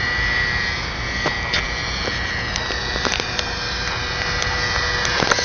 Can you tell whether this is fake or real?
real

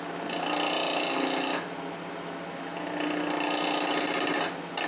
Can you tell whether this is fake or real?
real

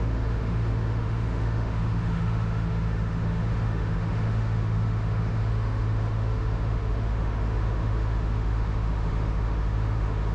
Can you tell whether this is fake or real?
fake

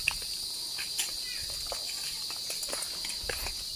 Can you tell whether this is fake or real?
real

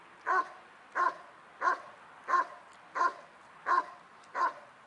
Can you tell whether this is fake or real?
real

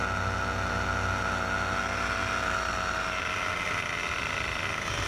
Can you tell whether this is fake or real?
real